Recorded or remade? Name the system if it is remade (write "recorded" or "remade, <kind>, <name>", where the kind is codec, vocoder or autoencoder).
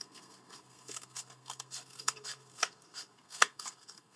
remade, codec, SNAC